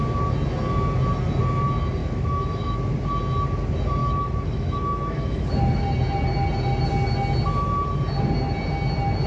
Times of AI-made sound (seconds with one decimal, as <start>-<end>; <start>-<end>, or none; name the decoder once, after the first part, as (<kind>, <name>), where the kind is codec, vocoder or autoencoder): 2.0-2.8 (autoencoder, DAC-VAE); 4.0-5.5